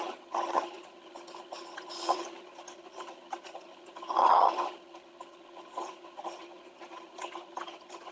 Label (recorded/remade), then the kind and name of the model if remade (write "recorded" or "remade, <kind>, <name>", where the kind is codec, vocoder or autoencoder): remade, vocoder, HiFi-GAN